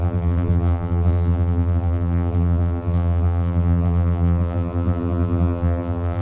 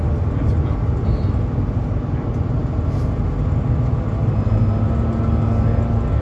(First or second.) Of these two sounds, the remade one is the first